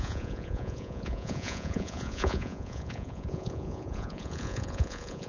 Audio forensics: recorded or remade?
remade